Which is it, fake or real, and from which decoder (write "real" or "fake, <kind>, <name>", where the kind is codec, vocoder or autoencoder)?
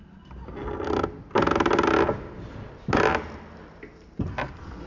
real